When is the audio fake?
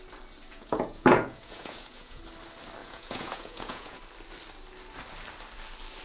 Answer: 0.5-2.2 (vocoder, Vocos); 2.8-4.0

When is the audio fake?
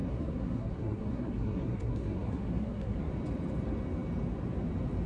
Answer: 0.0-3.1 (codec, SNAC)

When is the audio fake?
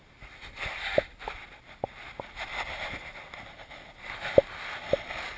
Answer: none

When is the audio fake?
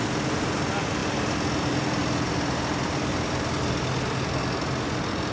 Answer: none